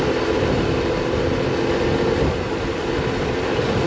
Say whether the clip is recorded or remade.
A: recorded